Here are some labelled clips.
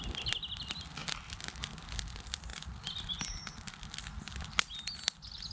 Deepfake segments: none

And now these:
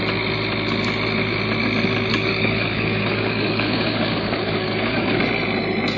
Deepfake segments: 2.1-5.2 (codec, DAC)

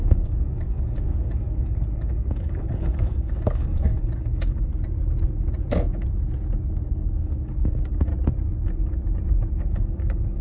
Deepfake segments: 0.0-4.7 (codec, DAC); 6.7-8.1; 9.7-10.4

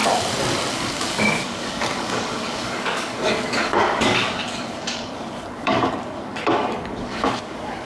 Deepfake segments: 0.7-7.8 (codec, DAC)

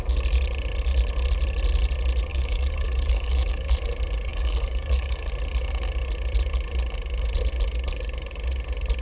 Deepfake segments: 2.3-3.7 (codec, DAC); 4.3-5.3

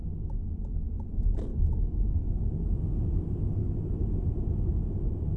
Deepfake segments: 1.5-2.5 (codec, DAC)

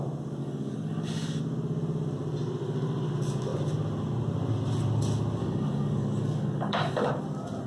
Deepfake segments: 0.4-1.4 (codec, DAC); 5.4-7.1